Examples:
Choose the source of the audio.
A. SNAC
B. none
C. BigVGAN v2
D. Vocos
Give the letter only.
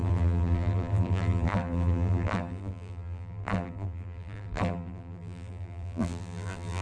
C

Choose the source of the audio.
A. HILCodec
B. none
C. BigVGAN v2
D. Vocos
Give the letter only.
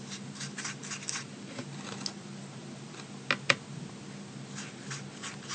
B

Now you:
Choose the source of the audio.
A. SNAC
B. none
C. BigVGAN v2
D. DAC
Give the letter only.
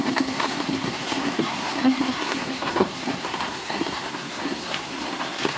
A